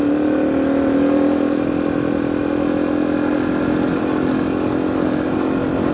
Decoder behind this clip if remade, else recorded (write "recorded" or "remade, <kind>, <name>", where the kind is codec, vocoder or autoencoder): recorded